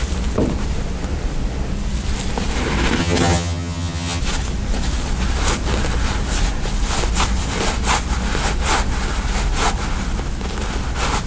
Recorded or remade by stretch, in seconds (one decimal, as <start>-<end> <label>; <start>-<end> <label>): 0.0-3.0 recorded; 3.0-4.2 remade; 4.2-11.3 recorded